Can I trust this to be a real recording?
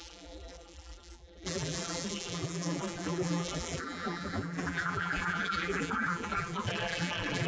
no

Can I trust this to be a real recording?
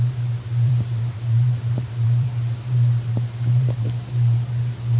no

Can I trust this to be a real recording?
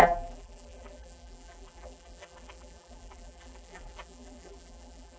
no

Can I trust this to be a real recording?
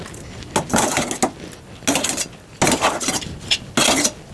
yes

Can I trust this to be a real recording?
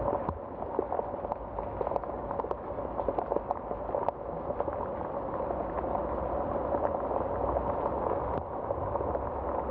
yes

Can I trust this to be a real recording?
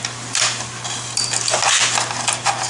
yes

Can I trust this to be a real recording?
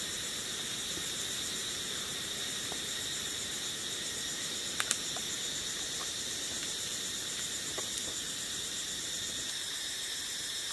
no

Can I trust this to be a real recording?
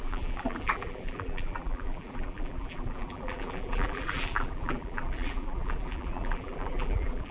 no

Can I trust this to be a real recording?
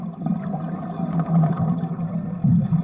yes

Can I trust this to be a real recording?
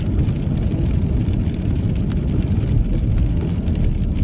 no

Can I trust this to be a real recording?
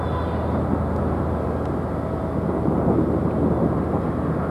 yes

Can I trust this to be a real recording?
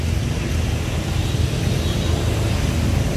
yes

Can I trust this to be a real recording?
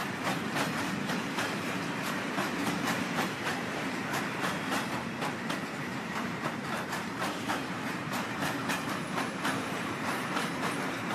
no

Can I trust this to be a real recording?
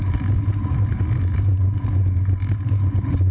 no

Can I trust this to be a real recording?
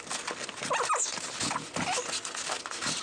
yes